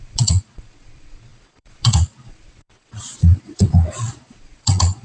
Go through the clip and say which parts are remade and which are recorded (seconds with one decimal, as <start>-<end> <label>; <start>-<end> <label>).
0.0-5.0 remade